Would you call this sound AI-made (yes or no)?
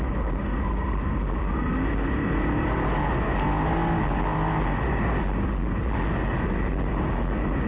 no